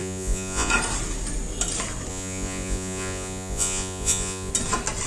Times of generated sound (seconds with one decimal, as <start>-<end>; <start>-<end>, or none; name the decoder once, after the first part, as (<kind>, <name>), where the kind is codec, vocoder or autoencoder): 0.0-0.7 (vocoder, Vocos); 2.1-4.5